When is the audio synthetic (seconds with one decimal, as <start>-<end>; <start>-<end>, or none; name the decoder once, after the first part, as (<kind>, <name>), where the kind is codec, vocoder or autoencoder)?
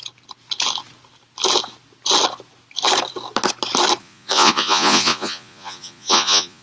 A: 4.0-6.6 (vocoder, Vocos)